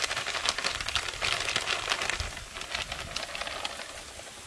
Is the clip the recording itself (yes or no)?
yes